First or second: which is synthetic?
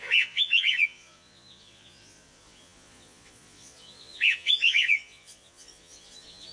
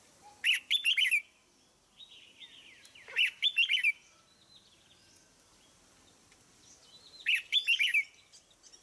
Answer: first